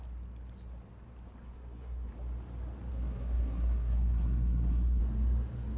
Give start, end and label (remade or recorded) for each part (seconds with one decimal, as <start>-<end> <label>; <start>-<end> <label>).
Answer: 0.0-1.4 recorded; 1.4-2.1 remade; 2.1-2.9 recorded; 2.9-5.0 remade; 5.0-5.8 recorded